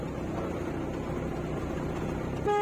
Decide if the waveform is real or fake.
real